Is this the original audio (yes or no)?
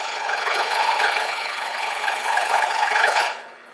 no